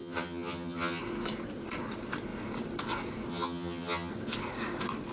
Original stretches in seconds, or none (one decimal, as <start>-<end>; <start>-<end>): 1.0-3.3; 4.1-5.1